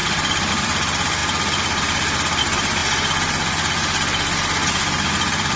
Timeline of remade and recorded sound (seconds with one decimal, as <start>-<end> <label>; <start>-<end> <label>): 0.0-1.2 remade; 1.2-2.4 recorded; 2.4-2.8 remade; 2.8-5.1 recorded; 5.1-5.6 remade